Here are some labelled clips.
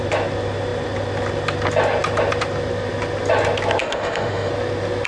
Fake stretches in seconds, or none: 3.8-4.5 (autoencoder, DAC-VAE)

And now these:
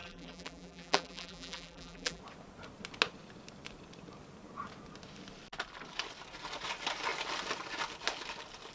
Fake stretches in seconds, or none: 0.0-2.2 (vocoder, BigVGAN v2)

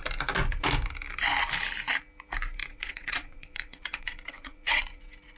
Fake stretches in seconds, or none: 2.6-5.0 (vocoder, WaveNeXt)

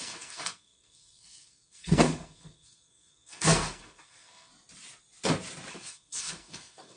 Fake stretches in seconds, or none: 0.0-4.5 (codec, SNAC); 5.7-7.0

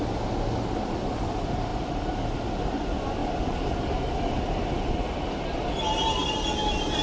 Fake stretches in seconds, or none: none

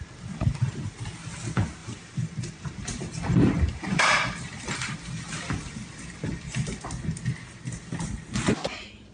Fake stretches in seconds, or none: 1.8-6.8 (vocoder, BigVGAN v2)